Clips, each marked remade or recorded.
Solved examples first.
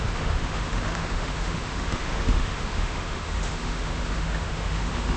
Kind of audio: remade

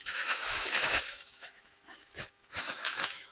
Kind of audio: remade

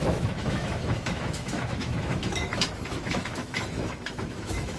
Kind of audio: remade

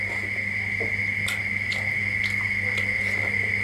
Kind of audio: recorded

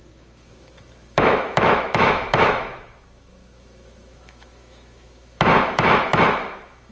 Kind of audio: remade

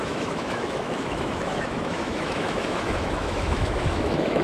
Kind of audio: remade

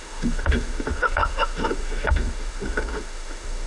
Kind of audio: remade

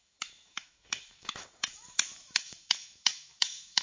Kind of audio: remade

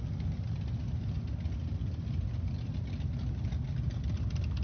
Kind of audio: recorded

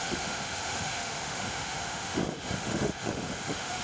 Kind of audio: remade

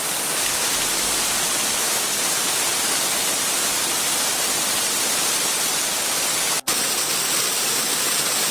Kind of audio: recorded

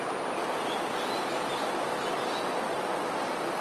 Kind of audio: recorded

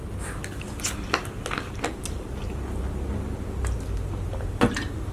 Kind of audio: recorded